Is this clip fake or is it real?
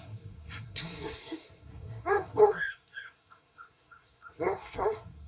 fake